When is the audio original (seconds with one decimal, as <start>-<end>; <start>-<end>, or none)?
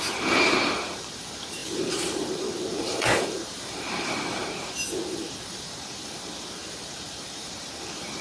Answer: 4.4-5.1